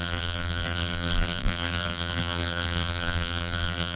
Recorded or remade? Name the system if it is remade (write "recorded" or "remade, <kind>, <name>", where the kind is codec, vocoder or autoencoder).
remade, vocoder, BigVGAN v2